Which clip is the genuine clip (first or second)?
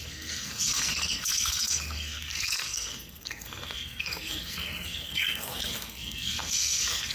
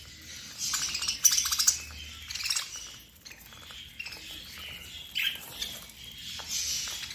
second